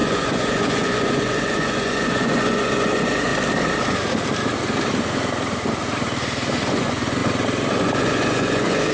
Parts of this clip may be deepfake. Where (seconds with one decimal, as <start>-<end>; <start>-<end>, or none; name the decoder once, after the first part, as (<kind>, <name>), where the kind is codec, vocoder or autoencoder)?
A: 0.0-3.3 (vocoder, Vocos); 6.7-7.2; 7.8-8.9